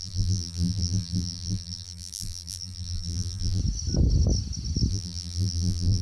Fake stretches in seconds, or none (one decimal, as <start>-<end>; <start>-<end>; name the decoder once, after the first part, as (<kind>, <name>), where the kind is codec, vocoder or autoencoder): 0.0-3.6 (vocoder, BigVGAN v2); 4.9-6.0